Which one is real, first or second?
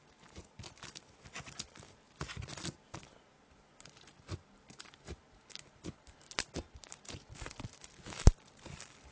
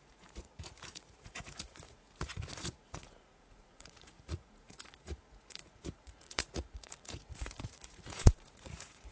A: first